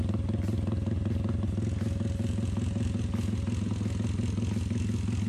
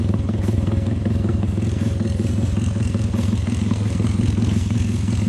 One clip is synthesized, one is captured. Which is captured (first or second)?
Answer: first